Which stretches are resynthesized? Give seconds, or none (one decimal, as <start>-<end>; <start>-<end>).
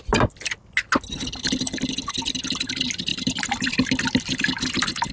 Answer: 3.1-3.7